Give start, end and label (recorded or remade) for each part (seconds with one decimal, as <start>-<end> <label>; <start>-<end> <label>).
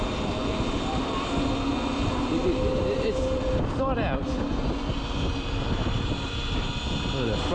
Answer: 0.0-7.5 recorded